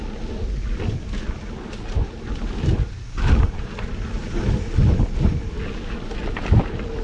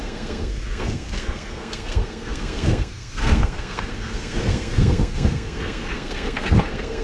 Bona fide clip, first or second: first